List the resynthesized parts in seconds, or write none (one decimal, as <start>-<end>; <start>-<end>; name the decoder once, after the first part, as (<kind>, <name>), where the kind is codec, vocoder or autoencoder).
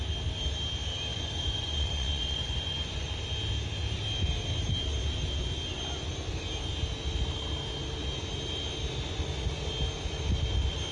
1.1-3.2 (vocoder, Vocos)